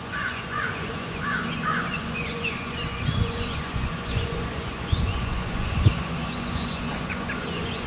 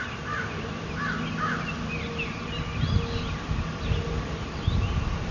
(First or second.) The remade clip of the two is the first